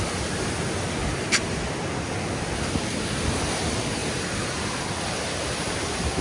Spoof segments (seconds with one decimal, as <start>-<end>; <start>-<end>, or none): 1.0-2.3; 4.0-6.2